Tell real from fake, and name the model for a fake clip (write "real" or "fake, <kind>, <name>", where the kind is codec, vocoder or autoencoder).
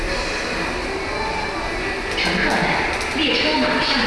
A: real